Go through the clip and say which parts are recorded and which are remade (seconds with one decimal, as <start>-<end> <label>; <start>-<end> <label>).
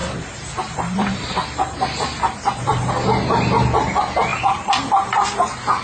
0.0-2.9 remade; 2.9-4.3 recorded; 4.3-4.9 remade; 4.9-5.8 recorded